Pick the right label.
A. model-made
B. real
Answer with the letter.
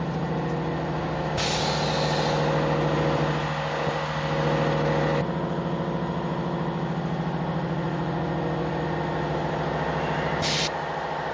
B